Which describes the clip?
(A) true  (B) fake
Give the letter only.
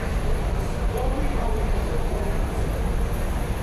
A